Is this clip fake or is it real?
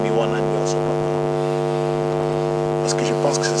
real